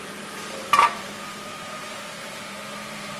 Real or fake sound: fake